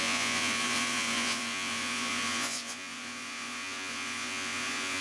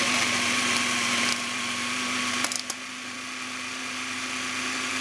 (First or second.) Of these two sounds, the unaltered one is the second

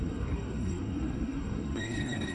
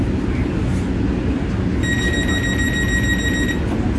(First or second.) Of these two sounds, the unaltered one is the second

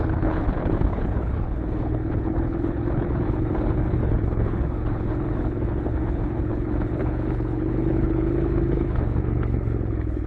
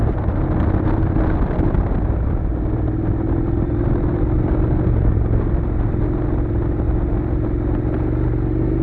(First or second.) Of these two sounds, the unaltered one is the second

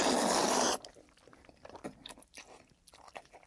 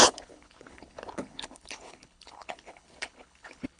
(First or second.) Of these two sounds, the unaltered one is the first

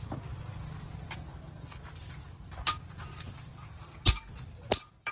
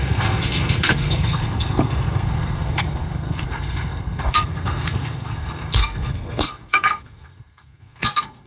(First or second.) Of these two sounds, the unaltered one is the first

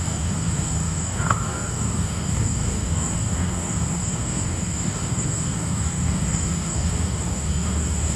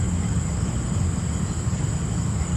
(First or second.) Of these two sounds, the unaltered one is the second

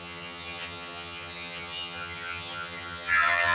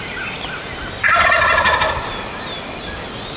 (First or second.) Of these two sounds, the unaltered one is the second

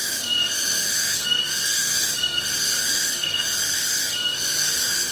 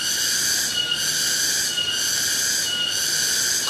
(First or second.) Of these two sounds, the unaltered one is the second